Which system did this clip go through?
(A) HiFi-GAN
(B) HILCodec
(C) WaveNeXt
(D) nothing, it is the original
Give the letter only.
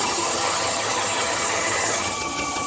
A